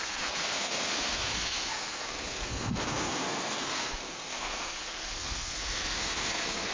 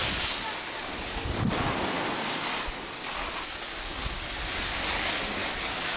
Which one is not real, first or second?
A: first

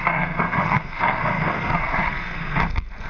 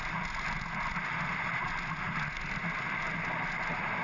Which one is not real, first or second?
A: first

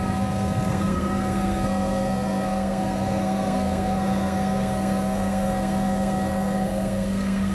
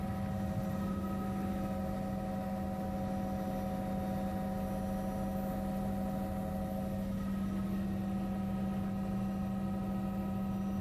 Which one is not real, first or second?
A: first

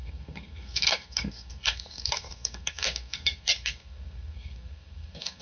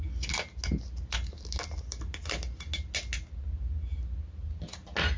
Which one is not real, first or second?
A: first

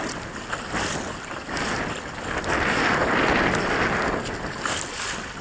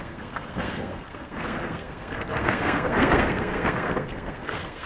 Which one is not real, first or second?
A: second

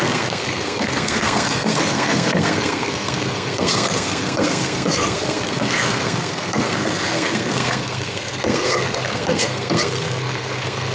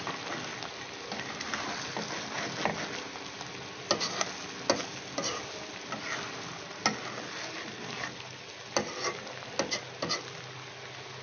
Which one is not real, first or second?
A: first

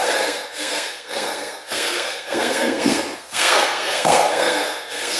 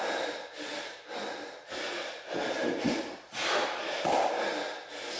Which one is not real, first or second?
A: first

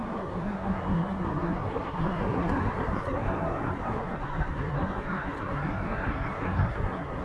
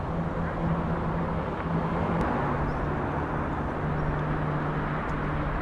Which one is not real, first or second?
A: first